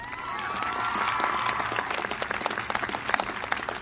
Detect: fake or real real